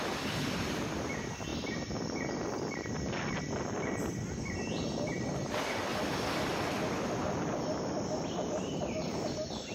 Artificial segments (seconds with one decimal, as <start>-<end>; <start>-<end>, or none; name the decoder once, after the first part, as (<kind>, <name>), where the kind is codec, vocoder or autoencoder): 0.0-9.7 (vocoder, BigVGAN v2)